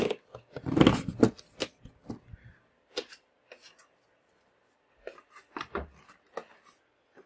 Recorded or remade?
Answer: recorded